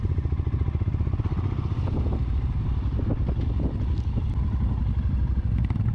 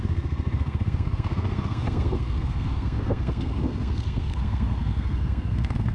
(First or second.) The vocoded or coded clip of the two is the second